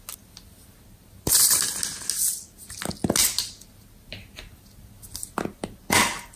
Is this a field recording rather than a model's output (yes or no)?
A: yes